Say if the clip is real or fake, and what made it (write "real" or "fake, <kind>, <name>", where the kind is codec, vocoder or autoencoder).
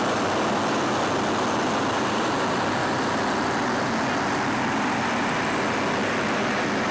real